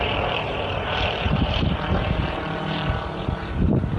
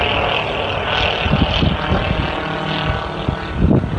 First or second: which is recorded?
second